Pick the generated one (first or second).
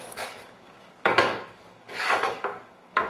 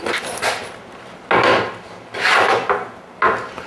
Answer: first